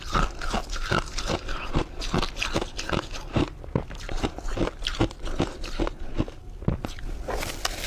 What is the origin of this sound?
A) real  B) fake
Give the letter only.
A